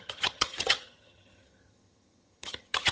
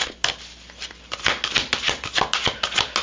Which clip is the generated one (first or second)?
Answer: first